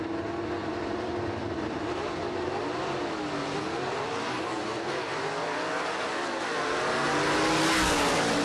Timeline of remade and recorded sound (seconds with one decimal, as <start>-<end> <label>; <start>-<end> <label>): 0.0-0.6 recorded; 0.6-2.0 remade; 2.0-3.4 recorded; 3.4-6.6 remade; 6.6-8.4 recorded